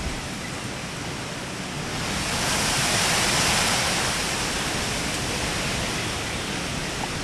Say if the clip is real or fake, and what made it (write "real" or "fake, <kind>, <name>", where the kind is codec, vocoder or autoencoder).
real